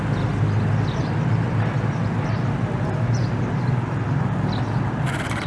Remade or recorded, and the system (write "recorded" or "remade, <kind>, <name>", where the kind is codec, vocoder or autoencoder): recorded